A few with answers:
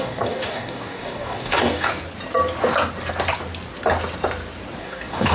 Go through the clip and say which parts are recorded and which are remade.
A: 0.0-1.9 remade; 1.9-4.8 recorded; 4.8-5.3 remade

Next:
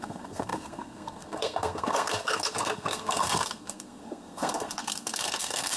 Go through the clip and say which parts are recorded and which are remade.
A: 0.0-5.8 remade

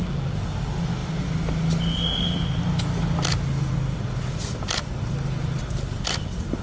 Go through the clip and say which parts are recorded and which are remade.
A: 0.0-6.6 recorded

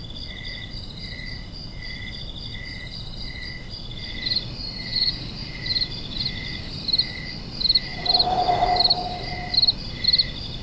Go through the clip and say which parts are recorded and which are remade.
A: 0.0-4.6 recorded; 4.6-5.1 remade; 5.1-10.6 recorded

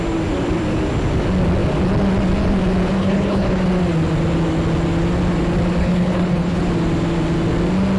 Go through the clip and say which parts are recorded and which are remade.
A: 0.0-3.0 recorded; 3.0-3.6 remade; 3.6-5.8 recorded; 5.8-6.6 remade; 6.6-8.0 recorded

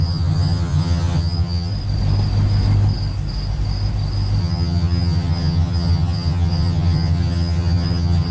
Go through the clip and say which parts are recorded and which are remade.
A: 0.0-1.7 remade; 1.7-4.4 recorded; 4.4-8.3 remade